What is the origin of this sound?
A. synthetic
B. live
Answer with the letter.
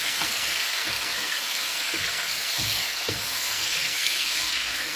A